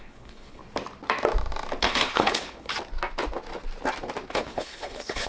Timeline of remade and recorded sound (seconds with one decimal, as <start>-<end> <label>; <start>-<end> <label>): 0.0-0.6 remade; 0.6-1.8 recorded; 1.8-2.7 remade; 2.7-4.3 recorded; 4.3-5.3 remade